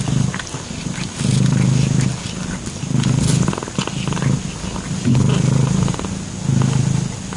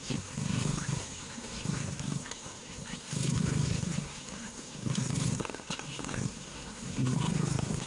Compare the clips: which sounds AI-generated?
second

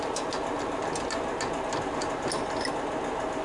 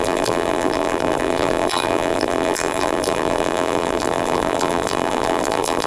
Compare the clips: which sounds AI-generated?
second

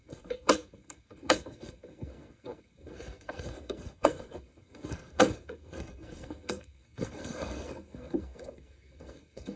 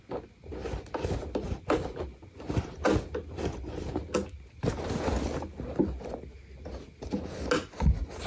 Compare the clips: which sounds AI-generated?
first